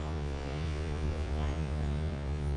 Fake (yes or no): yes